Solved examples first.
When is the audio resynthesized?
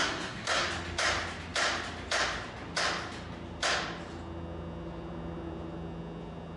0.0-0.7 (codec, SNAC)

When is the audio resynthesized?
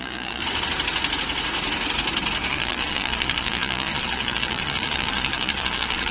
0.0-0.4 (vocoder, Vocos); 2.5-6.1